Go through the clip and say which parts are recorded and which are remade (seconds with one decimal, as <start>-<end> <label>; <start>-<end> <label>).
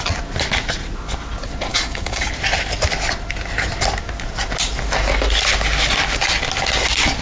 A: 0.0-1.7 recorded; 1.7-2.3 remade; 2.3-7.2 recorded